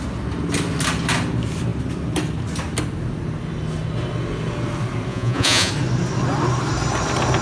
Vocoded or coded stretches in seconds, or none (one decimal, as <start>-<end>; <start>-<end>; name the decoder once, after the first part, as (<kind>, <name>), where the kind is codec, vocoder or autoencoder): 5.1-5.7 (vocoder, Vocos)